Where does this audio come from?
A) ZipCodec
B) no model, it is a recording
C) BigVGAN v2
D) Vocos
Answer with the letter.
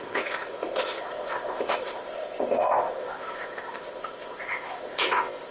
A